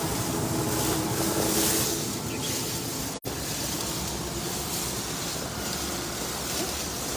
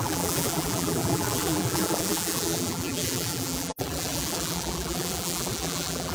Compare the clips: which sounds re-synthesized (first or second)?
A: second